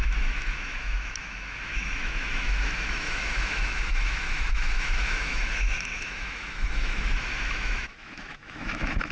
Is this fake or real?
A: fake